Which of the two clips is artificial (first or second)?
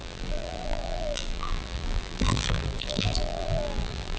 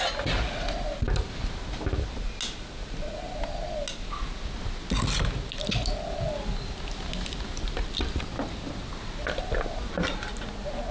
first